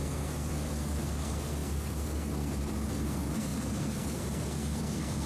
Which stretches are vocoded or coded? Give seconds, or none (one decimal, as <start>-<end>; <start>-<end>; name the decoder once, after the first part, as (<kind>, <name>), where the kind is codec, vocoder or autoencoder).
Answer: 0.0-5.3 (codec, SNAC)